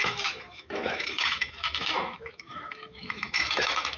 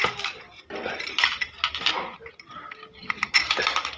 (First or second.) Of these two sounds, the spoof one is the first